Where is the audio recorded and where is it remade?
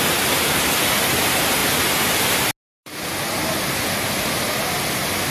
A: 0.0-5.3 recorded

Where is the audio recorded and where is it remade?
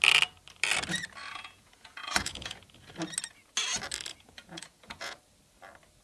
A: 0.0-1.2 recorded; 1.2-2.9 remade; 2.9-4.1 recorded; 4.1-5.2 remade; 5.2-6.0 recorded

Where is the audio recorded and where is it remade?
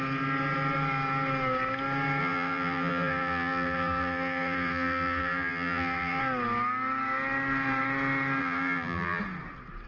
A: 0.0-2.2 recorded; 2.2-6.2 remade; 6.2-8.4 recorded; 8.4-9.2 remade; 9.2-9.9 recorded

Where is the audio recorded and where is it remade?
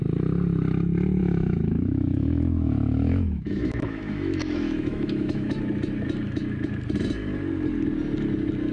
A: 0.0-1.2 recorded; 1.2-5.6 remade; 5.6-8.7 recorded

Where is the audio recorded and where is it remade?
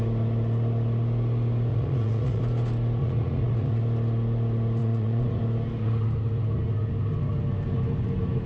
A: 0.0-1.7 recorded; 1.7-2.4 remade; 2.4-3.0 recorded; 3.0-3.8 remade; 3.8-4.8 recorded; 4.8-5.4 remade; 5.4-8.5 recorded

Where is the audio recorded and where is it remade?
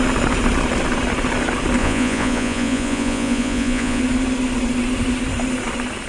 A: 0.0-1.8 recorded; 1.8-4.0 remade; 4.0-6.1 recorded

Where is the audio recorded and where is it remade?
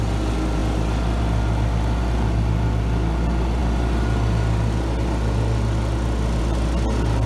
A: 0.0-7.3 recorded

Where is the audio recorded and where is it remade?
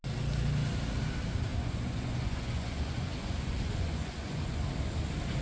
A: 0.0-1.5 recorded; 1.5-4.6 remade; 4.6-5.4 recorded